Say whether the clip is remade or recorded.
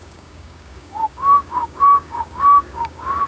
remade